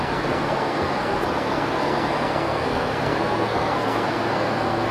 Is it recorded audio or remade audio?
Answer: remade